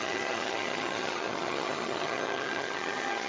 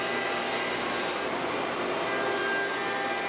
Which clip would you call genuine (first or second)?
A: second